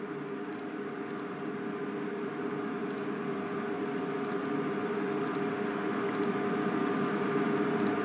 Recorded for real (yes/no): yes